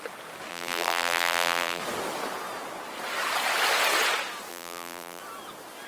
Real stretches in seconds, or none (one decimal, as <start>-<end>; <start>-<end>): 0.0-0.5; 1.8-4.5; 5.2-5.9